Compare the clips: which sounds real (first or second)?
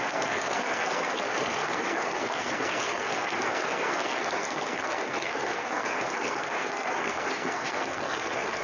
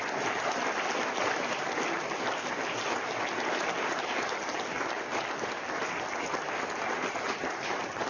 second